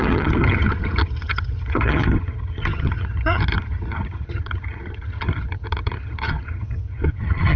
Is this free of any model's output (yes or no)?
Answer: no